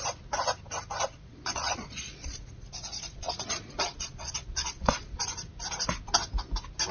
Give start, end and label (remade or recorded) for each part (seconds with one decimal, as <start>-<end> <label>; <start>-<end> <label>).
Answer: 0.0-1.1 recorded; 1.1-5.2 remade; 5.2-6.9 recorded